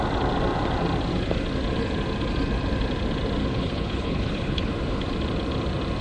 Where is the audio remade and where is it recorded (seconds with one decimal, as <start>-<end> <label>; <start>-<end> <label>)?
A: 0.0-3.4 recorded; 3.4-4.7 remade; 4.7-6.0 recorded